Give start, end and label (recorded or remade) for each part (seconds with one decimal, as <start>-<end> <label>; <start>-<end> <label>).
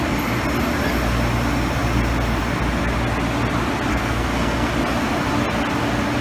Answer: 0.0-3.9 recorded; 3.9-4.7 remade; 4.7-6.2 recorded